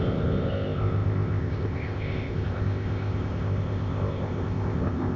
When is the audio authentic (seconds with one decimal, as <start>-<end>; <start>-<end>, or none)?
none